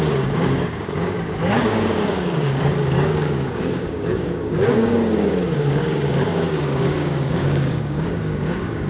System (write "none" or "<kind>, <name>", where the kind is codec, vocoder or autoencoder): codec, DAC